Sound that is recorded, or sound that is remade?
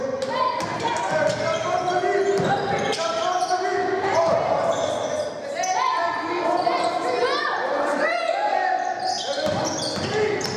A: recorded